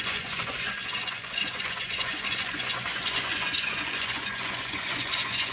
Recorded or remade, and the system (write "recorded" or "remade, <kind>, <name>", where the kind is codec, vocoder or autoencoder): remade, vocoder, Vocos